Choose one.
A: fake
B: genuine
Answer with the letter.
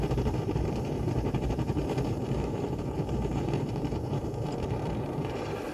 A